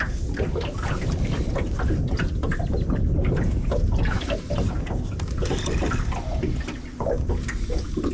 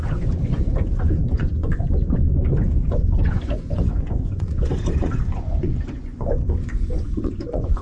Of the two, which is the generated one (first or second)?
second